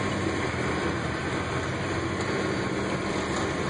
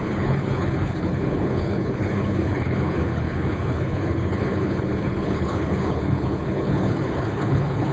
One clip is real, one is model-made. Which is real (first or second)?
first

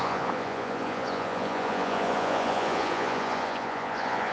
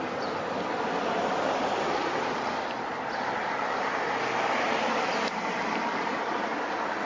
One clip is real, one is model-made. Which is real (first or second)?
second